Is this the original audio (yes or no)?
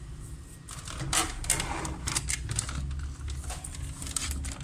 yes